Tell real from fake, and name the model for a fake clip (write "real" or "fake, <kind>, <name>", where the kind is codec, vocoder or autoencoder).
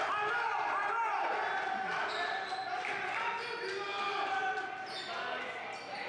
real